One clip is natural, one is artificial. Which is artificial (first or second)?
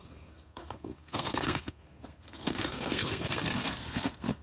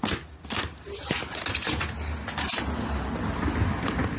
first